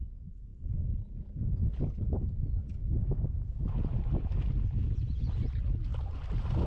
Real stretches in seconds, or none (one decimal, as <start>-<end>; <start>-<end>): 0.0-6.7